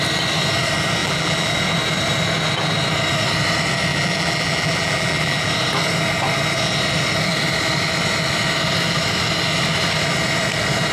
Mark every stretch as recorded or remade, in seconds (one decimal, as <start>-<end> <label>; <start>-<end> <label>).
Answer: 0.0-1.0 recorded; 1.0-1.5 remade; 1.5-3.9 recorded; 3.9-5.5 remade; 5.5-10.9 recorded